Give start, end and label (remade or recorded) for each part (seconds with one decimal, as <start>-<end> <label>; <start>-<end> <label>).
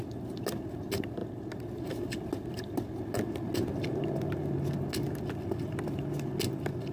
0.0-6.9 recorded